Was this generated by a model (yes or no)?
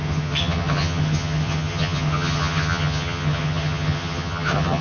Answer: yes